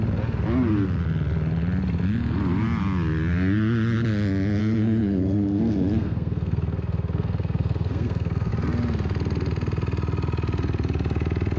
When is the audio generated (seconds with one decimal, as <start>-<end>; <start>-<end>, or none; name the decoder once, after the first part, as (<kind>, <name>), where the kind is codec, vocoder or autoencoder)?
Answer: 4.6-8.5 (codec, SNAC)